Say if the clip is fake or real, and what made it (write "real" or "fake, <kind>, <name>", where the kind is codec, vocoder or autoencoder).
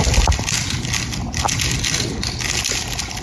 real